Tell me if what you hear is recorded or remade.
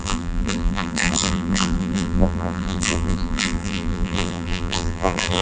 remade